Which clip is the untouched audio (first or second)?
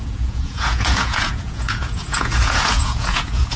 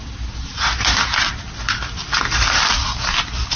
second